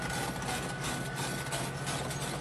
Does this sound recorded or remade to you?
recorded